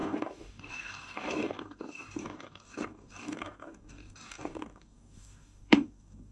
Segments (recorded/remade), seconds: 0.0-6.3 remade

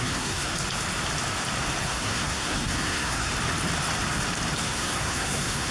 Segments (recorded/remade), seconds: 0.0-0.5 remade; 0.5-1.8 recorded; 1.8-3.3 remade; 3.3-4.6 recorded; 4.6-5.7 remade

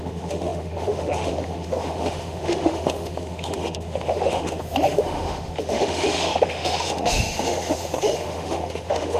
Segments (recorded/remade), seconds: 0.0-9.2 remade

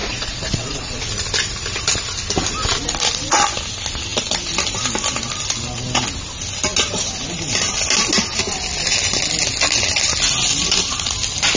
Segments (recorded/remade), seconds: 0.0-1.0 remade; 1.0-11.6 recorded